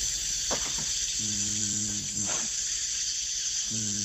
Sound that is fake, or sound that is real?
fake